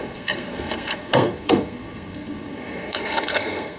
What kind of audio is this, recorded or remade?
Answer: remade